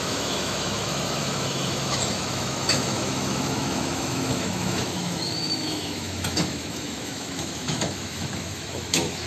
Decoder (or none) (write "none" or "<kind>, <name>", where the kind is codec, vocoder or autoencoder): autoencoder, DAC-VAE